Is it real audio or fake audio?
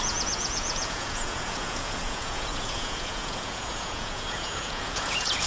fake